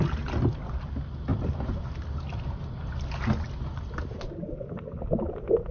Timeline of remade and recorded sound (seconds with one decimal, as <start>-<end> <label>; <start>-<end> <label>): 0.0-5.7 recorded